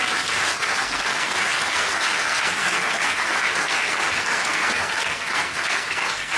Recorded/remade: remade